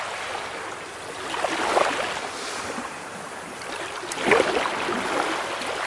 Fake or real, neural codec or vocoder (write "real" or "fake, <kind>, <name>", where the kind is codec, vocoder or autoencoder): real